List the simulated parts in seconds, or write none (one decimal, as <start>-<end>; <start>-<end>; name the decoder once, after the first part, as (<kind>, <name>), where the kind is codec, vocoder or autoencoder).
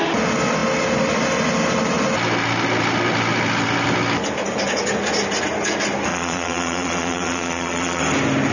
6.1-8.0 (vocoder, Vocos)